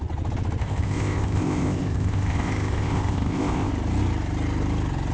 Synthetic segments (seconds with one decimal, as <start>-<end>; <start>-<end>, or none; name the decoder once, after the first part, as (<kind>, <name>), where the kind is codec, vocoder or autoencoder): 0.6-3.7 (codec, ZipCodec)